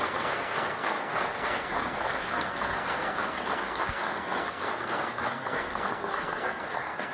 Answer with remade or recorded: remade